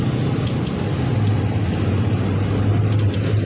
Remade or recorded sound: recorded